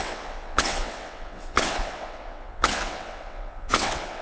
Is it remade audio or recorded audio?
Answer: remade